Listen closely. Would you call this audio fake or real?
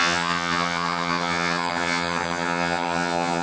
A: fake